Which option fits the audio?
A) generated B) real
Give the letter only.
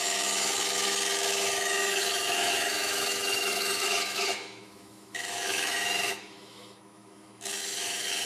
A